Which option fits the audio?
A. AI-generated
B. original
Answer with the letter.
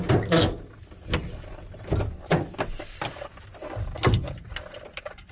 B